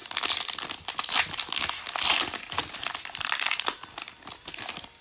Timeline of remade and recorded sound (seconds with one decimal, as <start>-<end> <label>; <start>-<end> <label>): 0.0-5.0 recorded